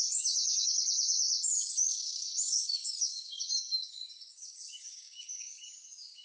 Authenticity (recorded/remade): remade